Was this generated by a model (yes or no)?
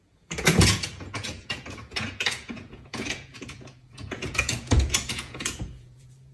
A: yes